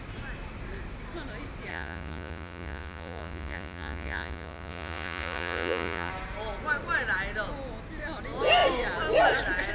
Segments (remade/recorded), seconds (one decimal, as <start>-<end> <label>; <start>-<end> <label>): 0.0-1.7 recorded; 1.7-6.1 remade; 6.1-9.7 recorded

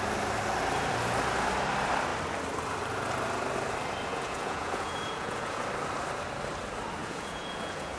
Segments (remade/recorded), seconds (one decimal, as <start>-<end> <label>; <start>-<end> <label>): 0.0-4.1 recorded; 4.1-5.6 remade; 5.6-7.0 recorded; 7.0-8.0 remade